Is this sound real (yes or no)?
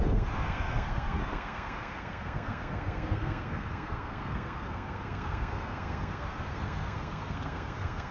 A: no